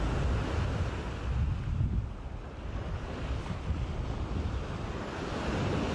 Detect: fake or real real